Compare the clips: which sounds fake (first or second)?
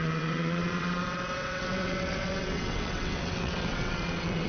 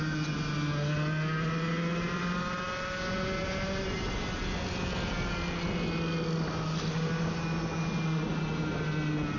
first